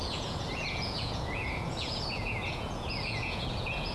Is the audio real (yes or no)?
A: no